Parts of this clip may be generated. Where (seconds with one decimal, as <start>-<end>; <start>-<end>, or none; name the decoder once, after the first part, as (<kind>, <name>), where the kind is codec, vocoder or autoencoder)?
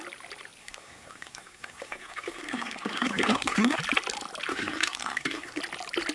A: 0.6-3.8 (codec, SNAC); 4.5-5.6